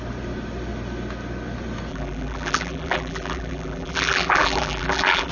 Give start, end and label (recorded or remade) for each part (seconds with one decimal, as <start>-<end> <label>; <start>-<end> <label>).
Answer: 0.0-1.9 recorded; 1.9-5.3 remade

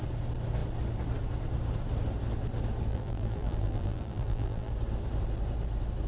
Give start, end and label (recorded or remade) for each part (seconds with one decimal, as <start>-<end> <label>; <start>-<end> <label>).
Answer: 0.0-2.9 recorded; 2.9-4.7 remade; 4.7-6.1 recorded

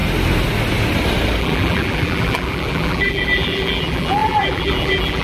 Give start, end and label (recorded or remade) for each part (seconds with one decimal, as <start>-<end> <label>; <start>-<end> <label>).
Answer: 0.0-1.4 recorded; 1.4-5.2 remade

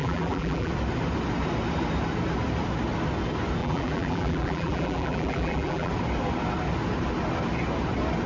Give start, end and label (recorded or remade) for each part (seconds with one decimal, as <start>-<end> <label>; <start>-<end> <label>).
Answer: 0.0-0.7 remade; 0.7-3.6 recorded; 3.6-5.9 remade; 5.9-8.3 recorded

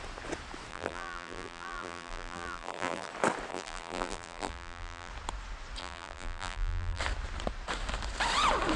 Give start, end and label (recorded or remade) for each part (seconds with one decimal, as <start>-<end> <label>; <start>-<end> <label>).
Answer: 0.0-0.7 recorded; 0.7-3.1 remade; 3.1-3.5 recorded; 3.5-5.1 remade; 5.1-5.8 recorded; 5.8-7.0 remade; 7.0-8.8 recorded